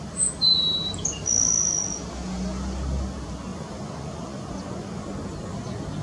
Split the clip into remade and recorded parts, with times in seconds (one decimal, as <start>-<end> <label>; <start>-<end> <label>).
0.0-3.5 recorded; 3.5-5.0 remade; 5.0-6.0 recorded